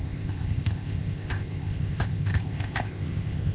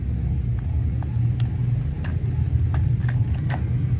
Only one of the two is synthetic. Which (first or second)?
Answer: first